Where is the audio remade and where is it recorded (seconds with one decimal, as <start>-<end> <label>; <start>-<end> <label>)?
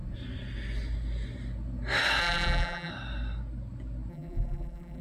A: 0.0-2.2 recorded; 2.2-2.9 remade; 2.9-4.1 recorded; 4.1-5.0 remade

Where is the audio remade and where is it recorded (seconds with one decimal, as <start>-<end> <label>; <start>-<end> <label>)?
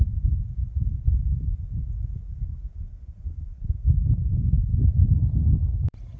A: 0.0-4.7 recorded; 4.7-5.6 remade; 5.6-6.2 recorded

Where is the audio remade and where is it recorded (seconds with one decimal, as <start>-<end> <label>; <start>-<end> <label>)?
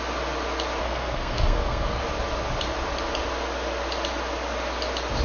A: 0.0-0.8 recorded; 0.8-2.0 remade; 2.0-5.2 recorded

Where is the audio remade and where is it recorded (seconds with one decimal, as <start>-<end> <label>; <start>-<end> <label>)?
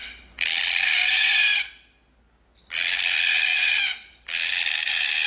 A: 0.0-5.3 recorded